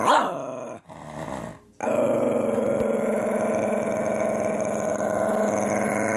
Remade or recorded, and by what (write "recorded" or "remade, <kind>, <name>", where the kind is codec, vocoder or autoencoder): recorded